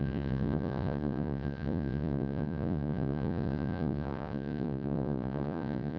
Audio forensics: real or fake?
fake